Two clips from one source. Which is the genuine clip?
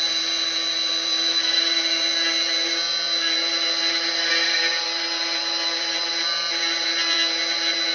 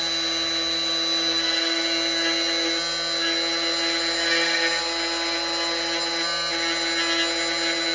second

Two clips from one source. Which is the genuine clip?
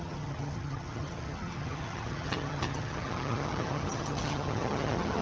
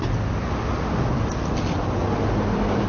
second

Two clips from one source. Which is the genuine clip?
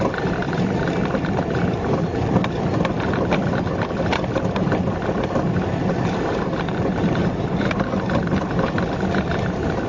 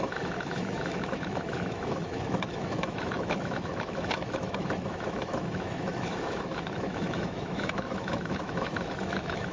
first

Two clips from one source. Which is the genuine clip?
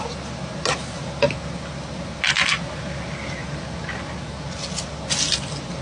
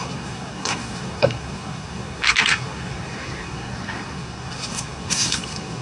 first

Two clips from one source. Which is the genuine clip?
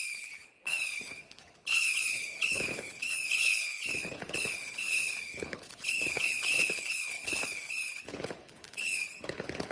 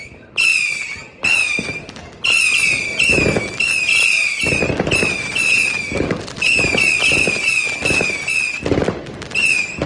second